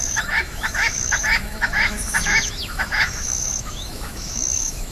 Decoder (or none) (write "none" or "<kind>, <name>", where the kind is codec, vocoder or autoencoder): autoencoder, DAC-VAE